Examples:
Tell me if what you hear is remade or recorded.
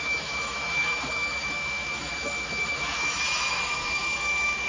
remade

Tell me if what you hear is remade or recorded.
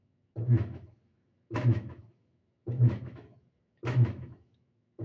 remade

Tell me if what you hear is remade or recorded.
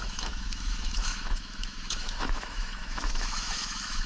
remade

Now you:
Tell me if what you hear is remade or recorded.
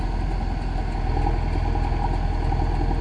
recorded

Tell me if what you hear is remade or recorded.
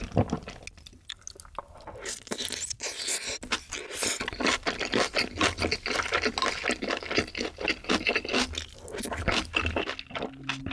recorded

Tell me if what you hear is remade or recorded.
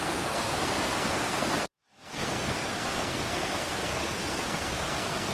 remade